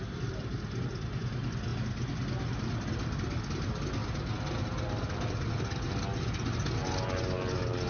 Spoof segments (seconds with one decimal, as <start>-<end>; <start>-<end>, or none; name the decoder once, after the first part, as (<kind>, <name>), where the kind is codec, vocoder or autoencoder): none